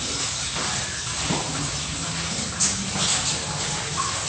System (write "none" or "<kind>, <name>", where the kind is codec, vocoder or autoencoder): none